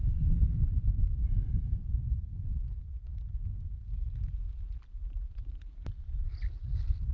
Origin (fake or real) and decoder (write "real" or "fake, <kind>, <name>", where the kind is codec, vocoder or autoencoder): real